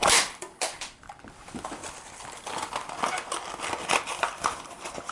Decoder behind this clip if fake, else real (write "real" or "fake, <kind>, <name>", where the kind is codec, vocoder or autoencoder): fake, vocoder, BigVGAN v2